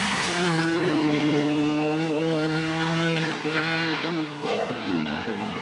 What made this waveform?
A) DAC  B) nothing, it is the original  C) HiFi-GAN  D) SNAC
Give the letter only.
D